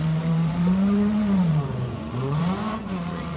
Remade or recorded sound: remade